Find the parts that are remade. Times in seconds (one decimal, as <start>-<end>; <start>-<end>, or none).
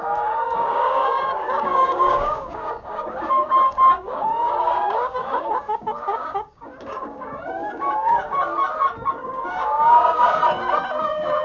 0.0-8.5; 9.1-10.4; 11.0-11.4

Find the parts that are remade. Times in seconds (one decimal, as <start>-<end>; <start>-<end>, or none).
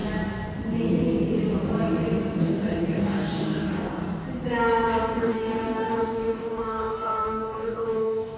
2.4-4.0; 5.2-8.4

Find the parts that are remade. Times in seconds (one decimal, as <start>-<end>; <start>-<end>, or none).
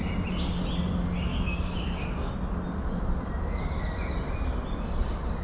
1.3-2.3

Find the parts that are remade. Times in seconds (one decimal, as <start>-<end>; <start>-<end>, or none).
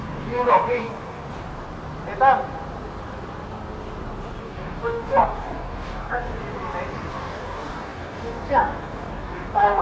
0.0-1.2; 4.4-6.4; 7.1-9.8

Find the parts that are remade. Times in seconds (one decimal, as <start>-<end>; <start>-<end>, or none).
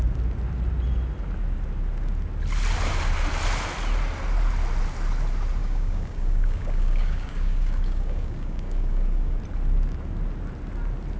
5.6-9.4